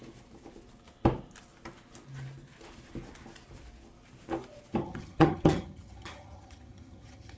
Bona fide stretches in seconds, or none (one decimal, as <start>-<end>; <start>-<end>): 0.0-4.8